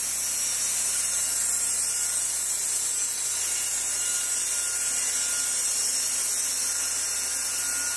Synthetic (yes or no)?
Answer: no